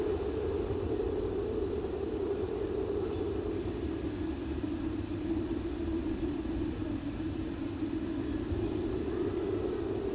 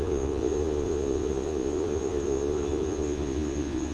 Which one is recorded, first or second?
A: first